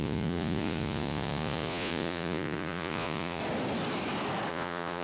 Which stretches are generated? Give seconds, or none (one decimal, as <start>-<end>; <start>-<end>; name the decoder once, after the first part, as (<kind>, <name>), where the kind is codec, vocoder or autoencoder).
0.0-3.4 (vocoder, Vocos); 4.5-5.0

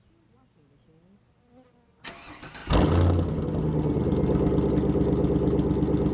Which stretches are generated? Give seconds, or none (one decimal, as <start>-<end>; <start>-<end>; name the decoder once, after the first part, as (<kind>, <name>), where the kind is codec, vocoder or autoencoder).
none

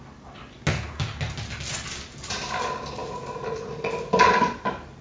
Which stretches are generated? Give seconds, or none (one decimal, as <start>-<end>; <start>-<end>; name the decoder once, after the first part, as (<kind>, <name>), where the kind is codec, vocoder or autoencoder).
none

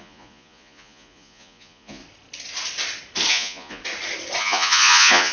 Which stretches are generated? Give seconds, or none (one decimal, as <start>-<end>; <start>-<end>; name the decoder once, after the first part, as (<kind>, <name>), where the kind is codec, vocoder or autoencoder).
0.0-2.0 (vocoder, Vocos); 3.3-3.8; 4.4-5.3

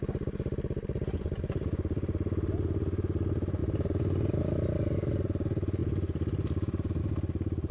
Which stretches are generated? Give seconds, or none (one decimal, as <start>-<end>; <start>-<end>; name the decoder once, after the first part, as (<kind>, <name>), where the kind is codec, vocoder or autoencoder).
none

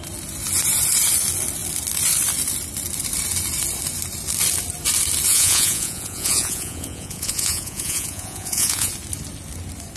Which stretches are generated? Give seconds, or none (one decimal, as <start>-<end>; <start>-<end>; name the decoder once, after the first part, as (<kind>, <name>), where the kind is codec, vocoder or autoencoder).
5.3-8.9 (vocoder, Vocos)

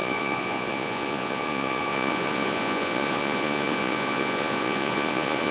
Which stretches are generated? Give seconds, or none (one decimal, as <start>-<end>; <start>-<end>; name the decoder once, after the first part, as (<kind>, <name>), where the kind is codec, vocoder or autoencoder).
0.0-5.5 (vocoder, Vocos)

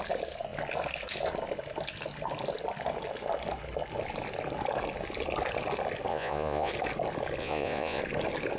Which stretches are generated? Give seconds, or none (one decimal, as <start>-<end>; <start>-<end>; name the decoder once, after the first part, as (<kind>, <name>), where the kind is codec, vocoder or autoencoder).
6.1-6.7 (vocoder, Vocos); 7.4-8.0